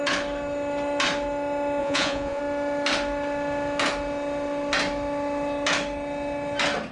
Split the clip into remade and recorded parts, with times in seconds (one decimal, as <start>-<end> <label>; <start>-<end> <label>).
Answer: 0.0-1.8 recorded; 1.8-2.4 remade; 2.4-6.9 recorded